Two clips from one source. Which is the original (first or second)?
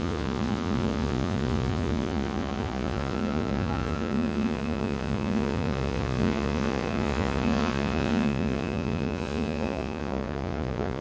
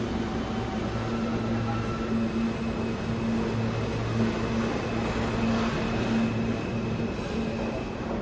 second